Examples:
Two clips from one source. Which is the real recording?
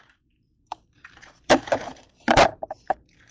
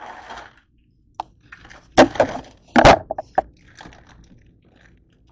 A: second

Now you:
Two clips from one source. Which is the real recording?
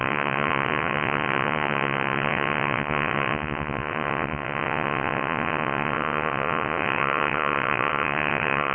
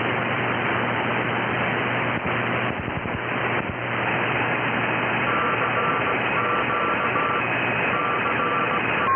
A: second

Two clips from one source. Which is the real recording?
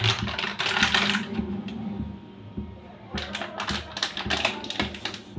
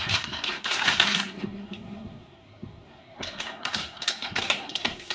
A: first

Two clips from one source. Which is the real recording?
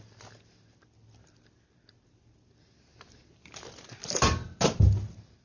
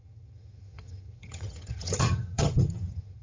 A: first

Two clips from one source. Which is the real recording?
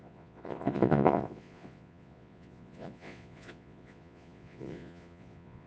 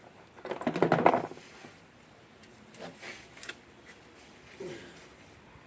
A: second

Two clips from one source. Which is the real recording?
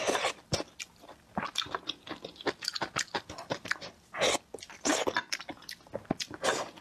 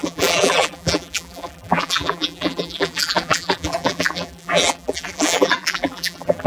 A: first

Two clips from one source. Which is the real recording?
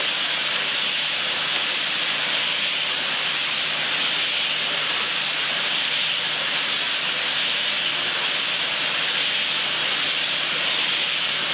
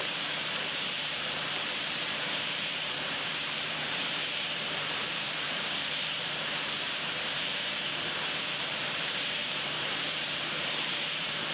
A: first